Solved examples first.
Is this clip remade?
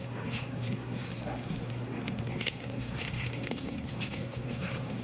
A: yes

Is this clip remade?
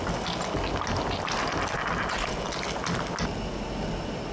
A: no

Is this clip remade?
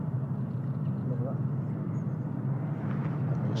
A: no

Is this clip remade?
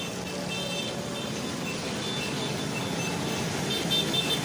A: no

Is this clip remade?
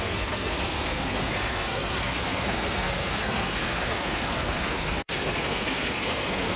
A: yes